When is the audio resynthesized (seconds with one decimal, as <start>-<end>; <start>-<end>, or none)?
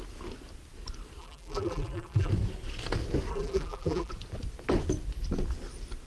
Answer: 1.2-2.3; 3.3-4.1